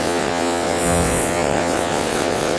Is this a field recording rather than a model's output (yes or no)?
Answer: no